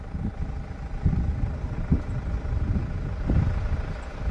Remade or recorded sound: remade